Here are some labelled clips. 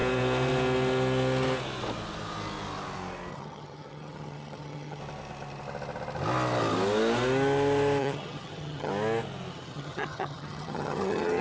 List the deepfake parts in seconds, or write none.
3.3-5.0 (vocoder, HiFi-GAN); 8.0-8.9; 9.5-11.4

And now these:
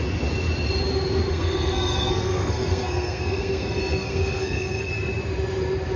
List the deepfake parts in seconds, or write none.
1.3-4.9 (codec, SNAC)

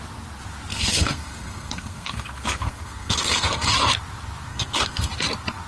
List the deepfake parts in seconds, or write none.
0.7-3.7 (codec, SNAC); 4.5-5.1

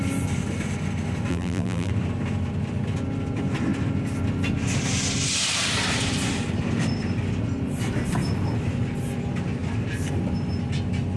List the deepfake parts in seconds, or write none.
1.3-1.9 (vocoder, BigVGAN v2)